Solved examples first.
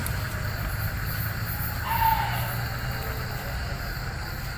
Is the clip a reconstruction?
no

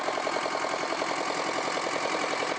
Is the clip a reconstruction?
no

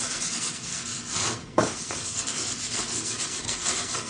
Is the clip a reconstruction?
yes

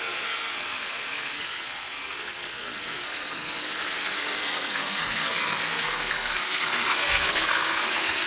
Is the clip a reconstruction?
yes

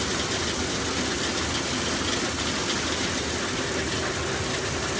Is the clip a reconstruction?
no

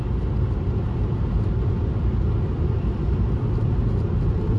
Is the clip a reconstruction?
no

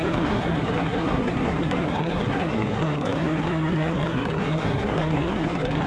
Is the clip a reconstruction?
yes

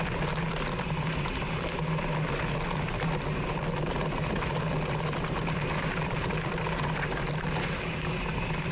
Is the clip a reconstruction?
no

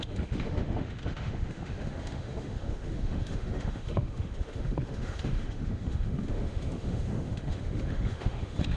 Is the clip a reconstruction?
yes